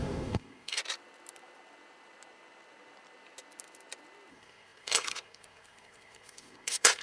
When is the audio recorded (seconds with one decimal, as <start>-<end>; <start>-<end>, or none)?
0.8-4.3